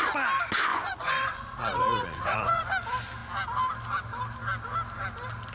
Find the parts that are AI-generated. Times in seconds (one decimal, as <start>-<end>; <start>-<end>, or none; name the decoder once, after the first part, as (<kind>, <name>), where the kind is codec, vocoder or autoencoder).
0.7-2.6 (vocoder, Vocos)